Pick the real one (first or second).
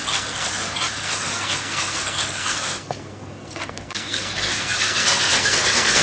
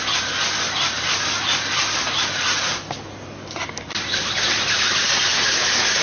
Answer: second